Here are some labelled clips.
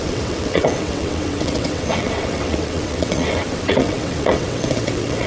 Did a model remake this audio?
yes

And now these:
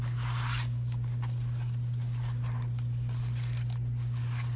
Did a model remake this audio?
no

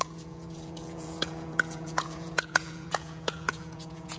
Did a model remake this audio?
yes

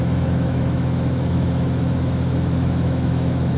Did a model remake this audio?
yes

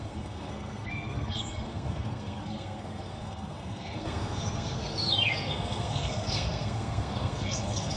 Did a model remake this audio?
yes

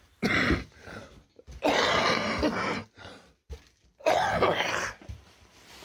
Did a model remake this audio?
yes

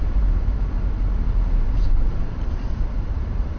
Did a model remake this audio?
yes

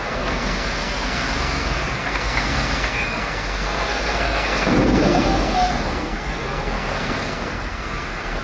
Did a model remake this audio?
yes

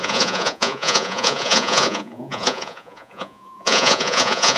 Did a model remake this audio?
yes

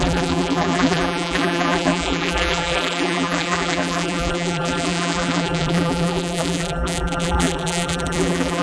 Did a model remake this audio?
yes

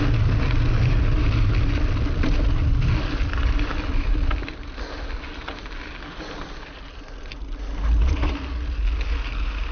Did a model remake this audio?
no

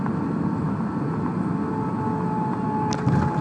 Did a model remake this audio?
no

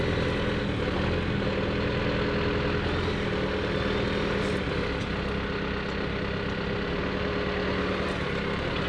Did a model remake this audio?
no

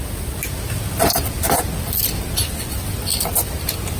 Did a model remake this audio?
no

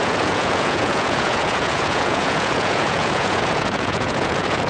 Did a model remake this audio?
yes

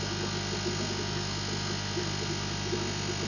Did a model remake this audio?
no